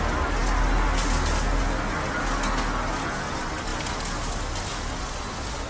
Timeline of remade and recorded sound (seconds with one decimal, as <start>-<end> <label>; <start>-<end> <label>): 0.0-5.7 recorded